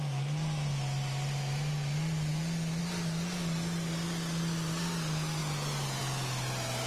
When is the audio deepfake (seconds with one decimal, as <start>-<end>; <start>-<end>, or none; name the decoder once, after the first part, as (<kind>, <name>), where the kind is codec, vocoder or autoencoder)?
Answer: none